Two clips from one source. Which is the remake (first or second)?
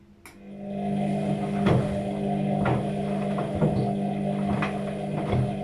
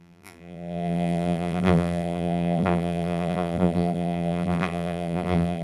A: second